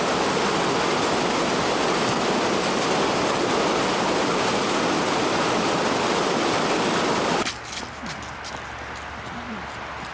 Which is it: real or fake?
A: real